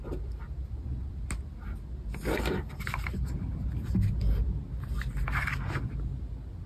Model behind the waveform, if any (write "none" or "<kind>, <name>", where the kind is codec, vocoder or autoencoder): none